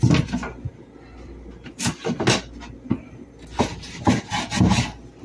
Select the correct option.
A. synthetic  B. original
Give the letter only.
B